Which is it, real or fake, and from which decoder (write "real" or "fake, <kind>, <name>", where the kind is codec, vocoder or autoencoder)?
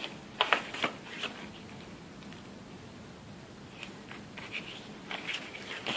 real